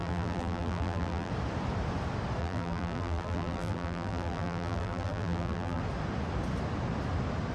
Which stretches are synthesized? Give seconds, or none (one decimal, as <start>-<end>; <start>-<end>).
0.0-1.3; 2.4-5.8